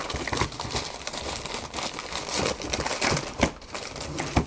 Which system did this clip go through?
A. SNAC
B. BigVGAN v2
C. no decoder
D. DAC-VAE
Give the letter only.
C